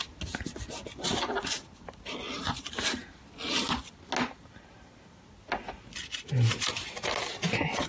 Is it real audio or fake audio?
real